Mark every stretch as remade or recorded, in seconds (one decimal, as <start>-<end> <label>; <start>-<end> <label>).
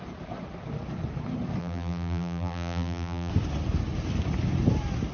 0.0-1.6 recorded; 1.6-3.3 remade; 3.3-5.1 recorded